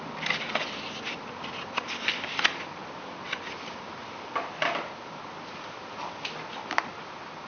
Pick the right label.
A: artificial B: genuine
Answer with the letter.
B